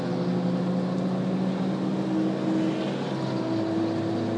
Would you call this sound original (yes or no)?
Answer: yes